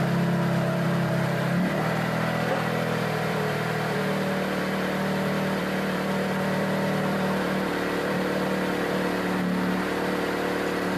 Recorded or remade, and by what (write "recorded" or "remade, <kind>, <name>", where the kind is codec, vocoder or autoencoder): remade, vocoder, BigVGAN v2